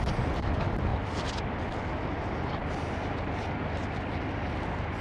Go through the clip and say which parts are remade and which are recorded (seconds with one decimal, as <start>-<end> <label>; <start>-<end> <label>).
0.0-5.0 recorded